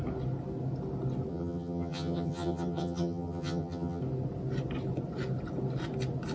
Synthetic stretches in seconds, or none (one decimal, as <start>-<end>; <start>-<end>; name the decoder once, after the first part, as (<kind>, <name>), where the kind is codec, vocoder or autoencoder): 1.3-4.0 (vocoder, HiFi-GAN)